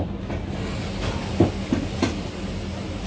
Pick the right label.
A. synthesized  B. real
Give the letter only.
B